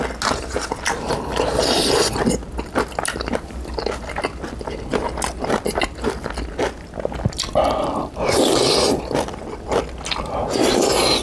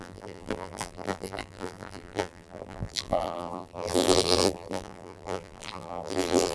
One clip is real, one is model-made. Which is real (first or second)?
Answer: first